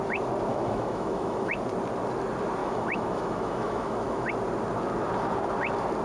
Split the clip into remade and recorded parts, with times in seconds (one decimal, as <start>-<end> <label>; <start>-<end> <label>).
0.0-0.5 recorded; 0.5-1.5 remade; 1.5-2.6 recorded; 2.6-4.3 remade; 4.3-6.0 recorded